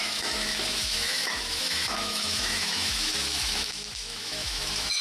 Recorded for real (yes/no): no